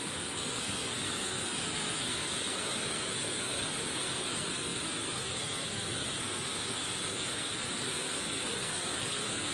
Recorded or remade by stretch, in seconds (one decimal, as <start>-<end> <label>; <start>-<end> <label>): 0.0-9.5 remade